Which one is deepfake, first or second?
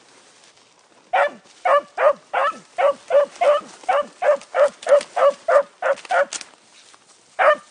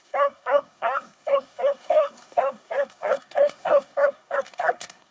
second